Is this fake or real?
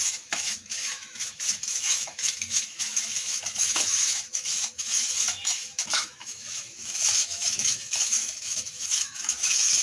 fake